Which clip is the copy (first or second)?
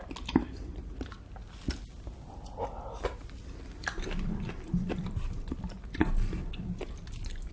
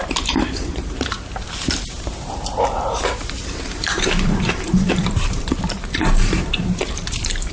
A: second